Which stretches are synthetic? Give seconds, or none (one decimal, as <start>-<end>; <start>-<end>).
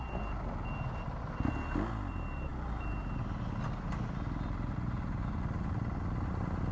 none